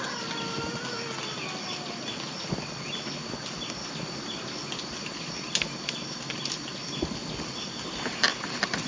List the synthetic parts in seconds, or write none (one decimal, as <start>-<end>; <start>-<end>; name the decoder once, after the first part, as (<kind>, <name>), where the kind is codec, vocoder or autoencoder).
none